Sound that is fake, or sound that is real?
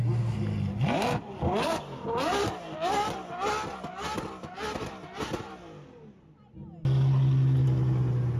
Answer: real